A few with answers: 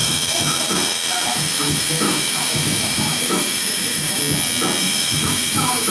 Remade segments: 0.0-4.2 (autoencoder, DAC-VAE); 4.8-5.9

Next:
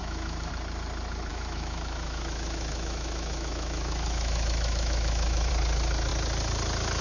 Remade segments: 0.0-0.5 (autoencoder, DAC-VAE); 1.3-5.5

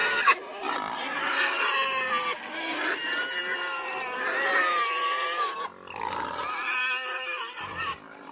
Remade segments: none

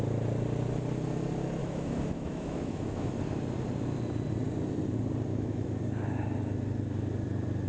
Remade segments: 1.6-3.1 (autoencoder, DAC-VAE); 5.3-5.8

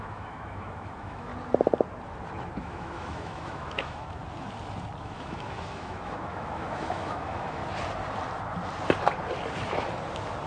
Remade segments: 0.0-1.3 (autoencoder, DAC-VAE); 2.6-4.2; 5.0-7.6